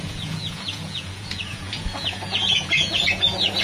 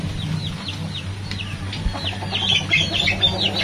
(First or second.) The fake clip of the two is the first